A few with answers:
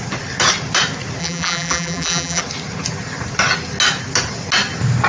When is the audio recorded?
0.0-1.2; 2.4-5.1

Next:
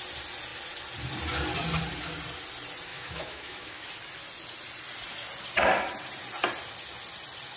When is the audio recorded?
0.0-2.9; 3.9-7.6

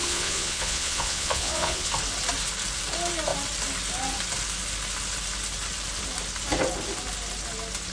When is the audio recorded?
1.9-7.9

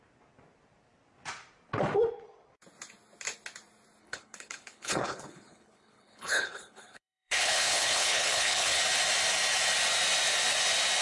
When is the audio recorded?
0.0-4.0; 8.8-11.0

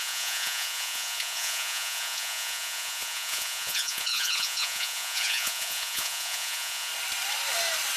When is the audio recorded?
6.9-8.0

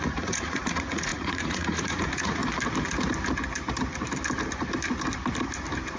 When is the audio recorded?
2.4-6.0

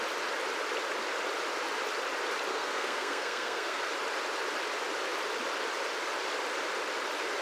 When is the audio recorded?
0.0-2.5; 3.8-7.4

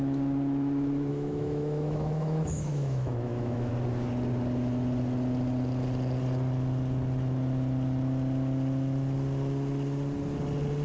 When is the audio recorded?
0.0-1.1; 3.7-10.8